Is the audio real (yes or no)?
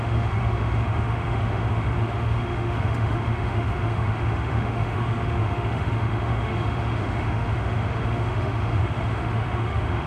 no